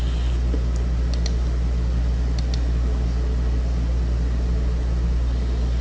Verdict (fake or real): real